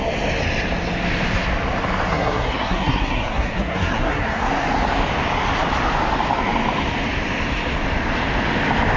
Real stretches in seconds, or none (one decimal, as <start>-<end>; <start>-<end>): 0.0-2.1; 4.5-9.0